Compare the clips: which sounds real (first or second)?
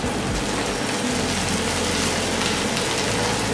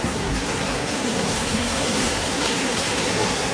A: first